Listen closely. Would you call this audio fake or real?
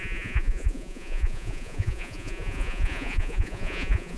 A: fake